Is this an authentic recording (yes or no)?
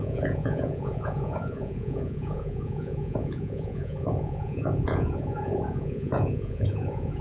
no